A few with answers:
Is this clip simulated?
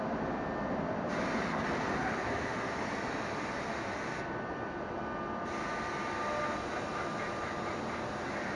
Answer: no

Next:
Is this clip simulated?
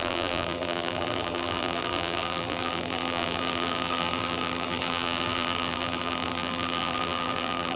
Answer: yes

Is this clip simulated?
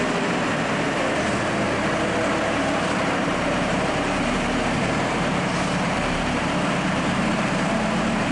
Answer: yes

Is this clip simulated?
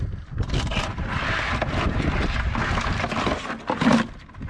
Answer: no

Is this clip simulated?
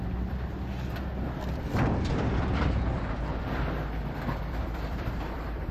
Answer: yes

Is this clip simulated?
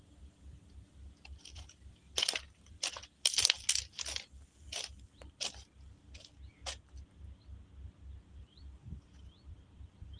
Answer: yes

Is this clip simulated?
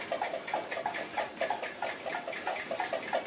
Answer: no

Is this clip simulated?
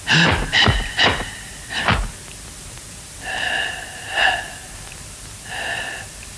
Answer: yes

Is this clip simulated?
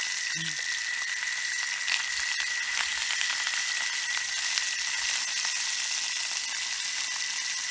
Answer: no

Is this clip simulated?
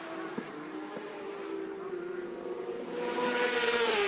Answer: yes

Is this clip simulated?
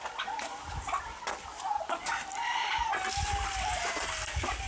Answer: no